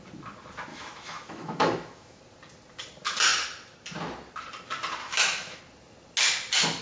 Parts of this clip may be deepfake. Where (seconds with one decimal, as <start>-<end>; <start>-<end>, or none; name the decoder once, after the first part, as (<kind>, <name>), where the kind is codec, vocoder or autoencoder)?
0.7-2.2 (autoencoder, DAC-VAE); 5.0-5.6